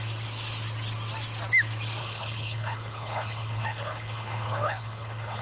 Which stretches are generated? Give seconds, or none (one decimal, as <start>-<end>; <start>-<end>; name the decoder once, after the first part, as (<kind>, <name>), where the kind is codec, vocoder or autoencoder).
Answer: 2.0-5.4 (codec, HILCodec)